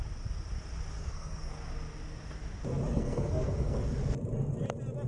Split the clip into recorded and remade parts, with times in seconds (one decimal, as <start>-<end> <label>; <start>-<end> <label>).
0.0-1.0 recorded; 1.0-1.5 remade; 1.5-2.9 recorded; 2.9-3.8 remade; 3.8-5.1 recorded